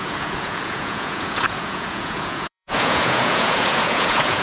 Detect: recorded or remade remade